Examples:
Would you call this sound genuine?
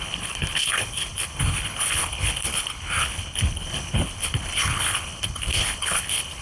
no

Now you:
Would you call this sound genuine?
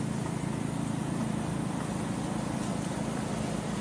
yes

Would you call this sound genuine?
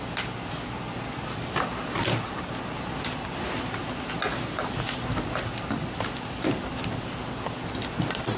yes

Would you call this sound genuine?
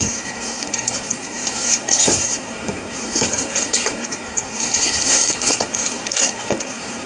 no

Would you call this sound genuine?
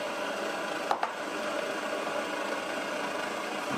yes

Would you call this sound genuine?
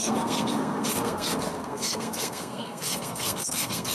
no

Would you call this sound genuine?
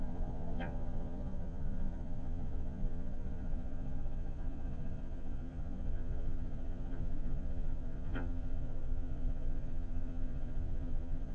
no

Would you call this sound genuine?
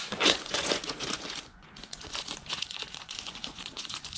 no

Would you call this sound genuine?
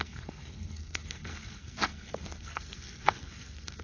no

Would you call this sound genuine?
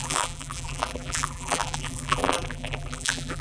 no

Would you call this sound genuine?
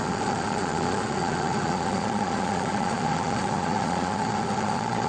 no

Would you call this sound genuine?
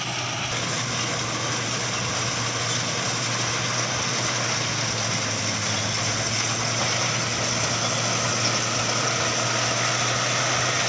yes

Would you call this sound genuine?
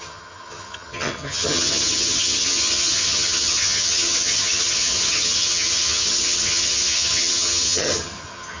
no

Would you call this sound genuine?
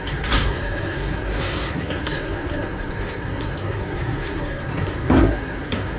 no